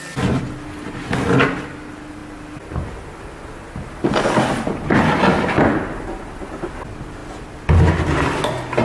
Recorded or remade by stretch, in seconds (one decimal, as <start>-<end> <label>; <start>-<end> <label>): 0.0-8.8 recorded